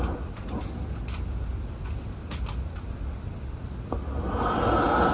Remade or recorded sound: recorded